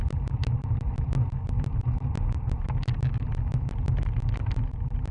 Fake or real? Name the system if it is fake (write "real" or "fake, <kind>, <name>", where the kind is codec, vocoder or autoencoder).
real